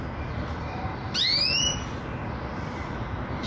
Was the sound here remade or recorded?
recorded